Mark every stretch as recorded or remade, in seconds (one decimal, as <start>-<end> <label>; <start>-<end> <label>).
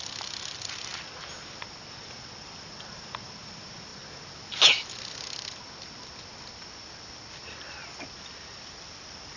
0.0-0.9 remade; 0.9-2.0 recorded; 2.0-3.9 remade; 3.9-8.6 recorded; 8.6-9.4 remade